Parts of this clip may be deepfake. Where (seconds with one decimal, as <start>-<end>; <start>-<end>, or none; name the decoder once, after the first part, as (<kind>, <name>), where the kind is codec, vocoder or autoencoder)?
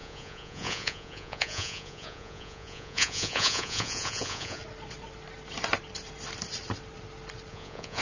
0.0-4.6 (vocoder, Vocos); 7.5-8.0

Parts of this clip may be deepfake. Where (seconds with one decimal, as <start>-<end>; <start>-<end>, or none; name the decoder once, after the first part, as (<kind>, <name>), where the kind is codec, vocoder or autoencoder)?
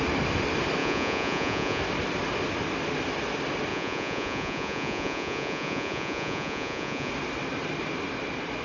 0.8-1.8 (vocoder, Vocos); 3.7-7.1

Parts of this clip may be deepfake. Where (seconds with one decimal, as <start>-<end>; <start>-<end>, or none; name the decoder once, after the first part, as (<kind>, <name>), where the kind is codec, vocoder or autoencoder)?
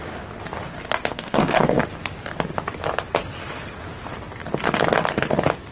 1.1-1.8 (codec, SNAC)